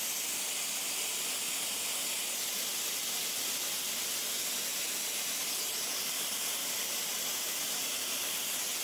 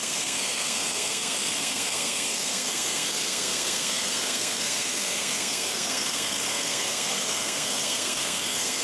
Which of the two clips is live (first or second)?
first